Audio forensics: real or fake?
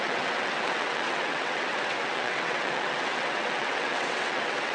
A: fake